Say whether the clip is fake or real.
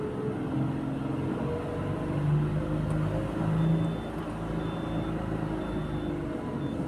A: real